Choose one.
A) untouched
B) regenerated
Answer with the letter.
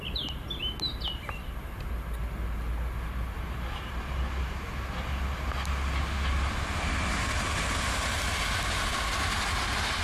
A